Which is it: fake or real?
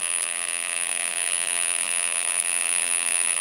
fake